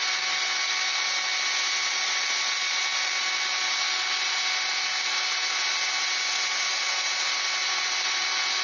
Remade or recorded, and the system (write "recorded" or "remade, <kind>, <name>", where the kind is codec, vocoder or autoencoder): recorded